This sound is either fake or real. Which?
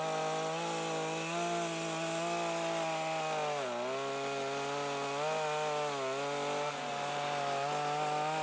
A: real